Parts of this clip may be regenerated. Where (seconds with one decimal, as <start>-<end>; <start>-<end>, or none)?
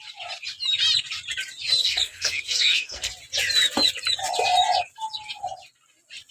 1.8-3.1